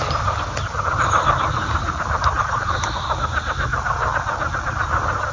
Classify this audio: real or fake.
real